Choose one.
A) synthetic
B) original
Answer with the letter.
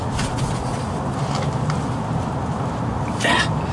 B